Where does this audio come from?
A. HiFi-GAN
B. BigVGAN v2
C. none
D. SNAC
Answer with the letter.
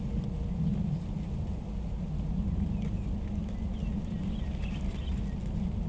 C